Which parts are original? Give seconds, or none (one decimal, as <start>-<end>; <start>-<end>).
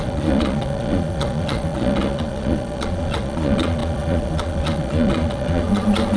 none